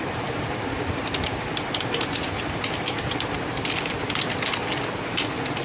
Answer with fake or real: real